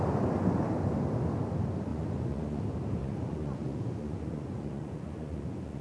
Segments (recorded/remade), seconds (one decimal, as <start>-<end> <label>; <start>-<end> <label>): 0.0-1.9 recorded; 1.9-2.6 remade; 2.6-3.0 recorded; 3.0-5.8 remade